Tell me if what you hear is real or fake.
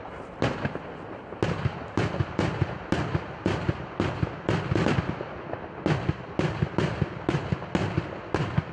real